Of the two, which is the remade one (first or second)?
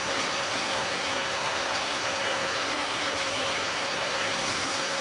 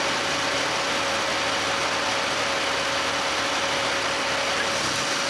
first